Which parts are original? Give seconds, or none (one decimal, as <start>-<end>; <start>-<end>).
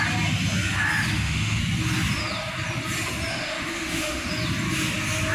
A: 0.0-1.1; 1.6-3.3; 4.3-5.3